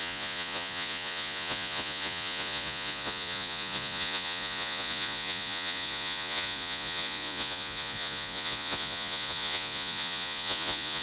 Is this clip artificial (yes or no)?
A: yes